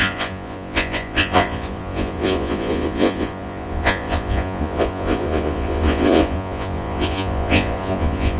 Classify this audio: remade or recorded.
remade